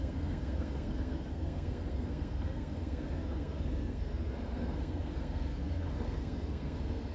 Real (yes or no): no